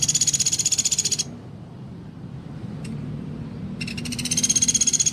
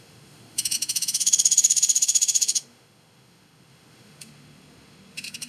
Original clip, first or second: first